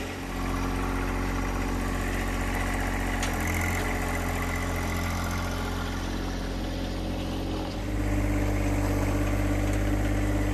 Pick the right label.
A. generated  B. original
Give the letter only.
B